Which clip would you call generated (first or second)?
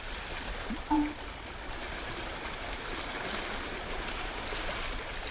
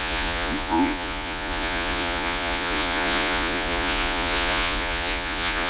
second